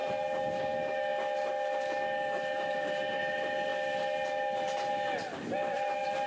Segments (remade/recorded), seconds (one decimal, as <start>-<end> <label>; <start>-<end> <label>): 0.0-6.3 recorded